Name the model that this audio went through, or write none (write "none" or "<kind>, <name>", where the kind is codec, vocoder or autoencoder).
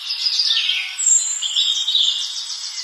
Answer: none